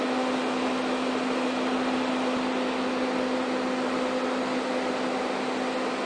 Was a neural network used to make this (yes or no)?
no